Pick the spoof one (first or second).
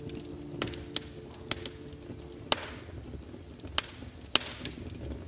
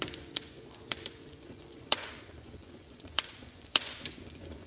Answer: second